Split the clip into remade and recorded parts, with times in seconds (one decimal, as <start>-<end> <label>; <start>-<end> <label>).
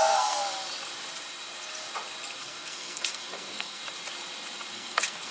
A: 0.0-0.4 remade; 0.4-2.4 recorded; 2.4-3.8 remade; 3.8-4.7 recorded; 4.7-5.3 remade